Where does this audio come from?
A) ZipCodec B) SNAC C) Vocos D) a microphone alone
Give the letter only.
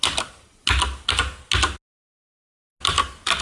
D